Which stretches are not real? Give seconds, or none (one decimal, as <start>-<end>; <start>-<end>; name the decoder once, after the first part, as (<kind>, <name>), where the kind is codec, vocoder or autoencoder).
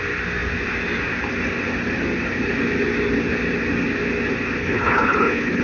4.6-5.6 (codec, HILCodec)